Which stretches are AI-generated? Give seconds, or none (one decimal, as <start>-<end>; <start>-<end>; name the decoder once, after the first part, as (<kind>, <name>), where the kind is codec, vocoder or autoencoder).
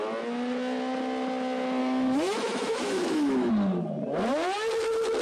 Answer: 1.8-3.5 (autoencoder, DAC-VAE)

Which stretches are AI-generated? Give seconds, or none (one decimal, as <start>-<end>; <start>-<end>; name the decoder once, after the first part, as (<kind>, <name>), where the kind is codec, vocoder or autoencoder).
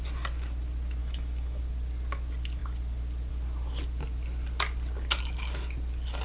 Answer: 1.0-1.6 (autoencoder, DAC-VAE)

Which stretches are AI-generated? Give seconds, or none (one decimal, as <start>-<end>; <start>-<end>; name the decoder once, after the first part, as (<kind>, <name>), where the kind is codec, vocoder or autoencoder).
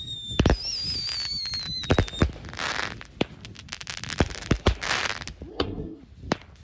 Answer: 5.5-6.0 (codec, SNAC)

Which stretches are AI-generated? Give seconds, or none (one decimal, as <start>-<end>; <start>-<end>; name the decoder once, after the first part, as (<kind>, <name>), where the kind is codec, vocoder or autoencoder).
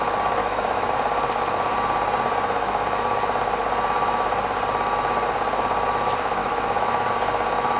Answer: 0.4-0.9 (autoencoder, DAC-VAE); 6.4-7.1